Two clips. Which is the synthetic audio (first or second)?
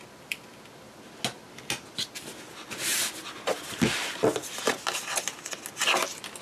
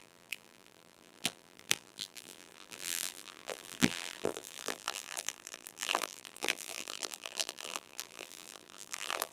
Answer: second